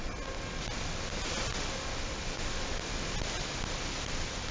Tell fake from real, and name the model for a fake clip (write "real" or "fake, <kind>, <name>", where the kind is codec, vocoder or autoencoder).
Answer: real